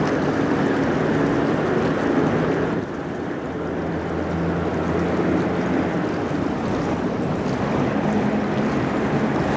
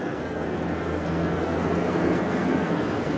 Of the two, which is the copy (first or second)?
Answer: second